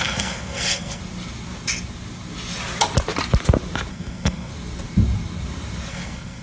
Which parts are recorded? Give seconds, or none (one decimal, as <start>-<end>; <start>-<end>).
1.0-3.9; 4.5-5.9